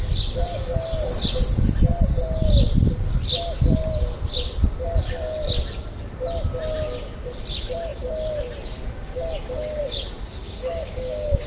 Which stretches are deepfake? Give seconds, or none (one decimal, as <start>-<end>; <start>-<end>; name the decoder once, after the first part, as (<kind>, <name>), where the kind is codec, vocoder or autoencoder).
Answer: 10.4-11.5 (codec, DAC)